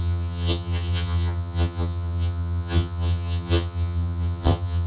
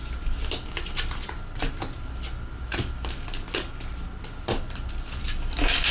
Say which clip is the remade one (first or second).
first